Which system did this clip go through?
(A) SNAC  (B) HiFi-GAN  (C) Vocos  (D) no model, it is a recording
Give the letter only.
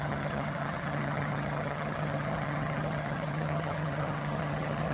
B